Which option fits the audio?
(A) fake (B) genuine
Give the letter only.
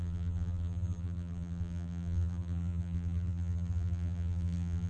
A